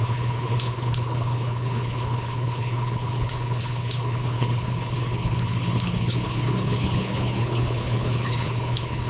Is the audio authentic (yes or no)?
no